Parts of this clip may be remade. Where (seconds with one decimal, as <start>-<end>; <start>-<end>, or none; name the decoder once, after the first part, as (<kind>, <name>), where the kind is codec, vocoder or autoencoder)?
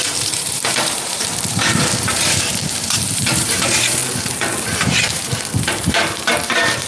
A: 0.0-4.0 (vocoder, BigVGAN v2); 4.6-6.9